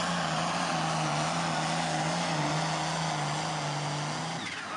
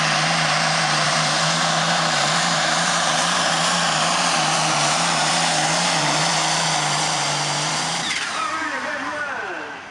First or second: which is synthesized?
second